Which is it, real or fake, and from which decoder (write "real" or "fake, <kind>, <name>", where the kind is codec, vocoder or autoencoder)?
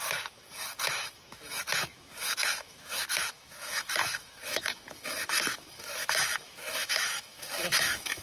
fake, autoencoder, DAC-VAE